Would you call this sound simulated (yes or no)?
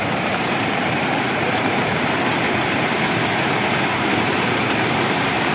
yes